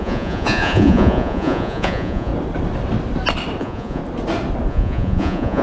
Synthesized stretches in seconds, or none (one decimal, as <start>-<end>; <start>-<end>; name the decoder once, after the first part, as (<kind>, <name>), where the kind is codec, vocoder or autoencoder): 0.0-2.3 (vocoder, Vocos); 3.6-4.0; 4.7-5.6